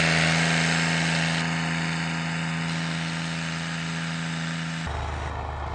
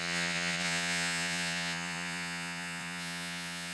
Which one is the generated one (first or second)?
second